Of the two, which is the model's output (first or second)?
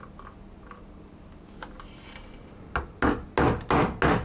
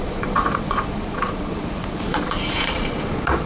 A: second